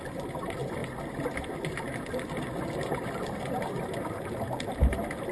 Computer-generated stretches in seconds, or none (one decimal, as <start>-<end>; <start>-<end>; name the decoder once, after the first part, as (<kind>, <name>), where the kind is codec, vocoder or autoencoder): none